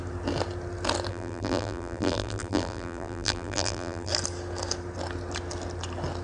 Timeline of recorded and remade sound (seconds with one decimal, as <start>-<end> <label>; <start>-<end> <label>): 0.0-1.1 recorded; 1.1-4.1 remade; 4.1-6.2 recorded

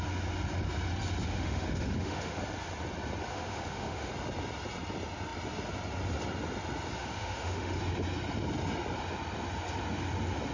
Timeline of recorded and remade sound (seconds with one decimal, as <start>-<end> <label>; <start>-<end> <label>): 0.0-1.2 recorded; 1.2-2.4 remade; 2.4-3.3 recorded; 3.3-4.1 remade; 4.1-7.0 recorded; 7.0-7.8 remade; 7.8-10.5 recorded